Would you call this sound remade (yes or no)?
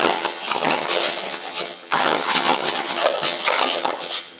yes